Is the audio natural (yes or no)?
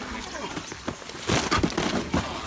yes